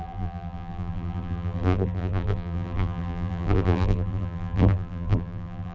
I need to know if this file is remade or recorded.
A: remade